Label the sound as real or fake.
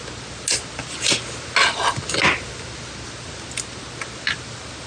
real